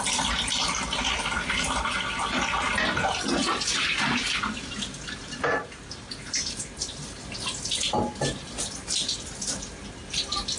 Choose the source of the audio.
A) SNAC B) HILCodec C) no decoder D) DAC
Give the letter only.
C